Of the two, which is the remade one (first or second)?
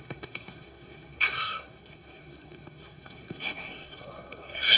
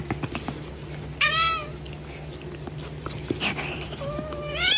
first